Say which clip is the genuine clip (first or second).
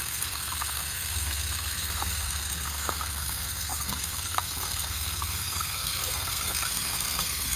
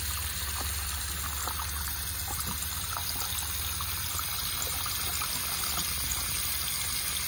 second